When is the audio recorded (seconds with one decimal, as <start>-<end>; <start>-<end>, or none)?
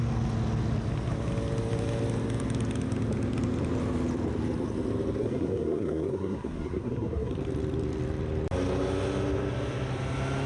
0.0-5.2; 7.3-10.5